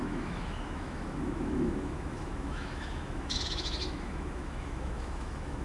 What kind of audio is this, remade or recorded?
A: remade